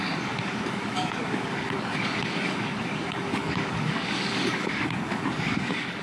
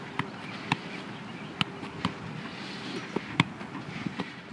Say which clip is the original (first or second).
second